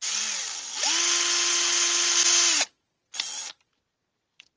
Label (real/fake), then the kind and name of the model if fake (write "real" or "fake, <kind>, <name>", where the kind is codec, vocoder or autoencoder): real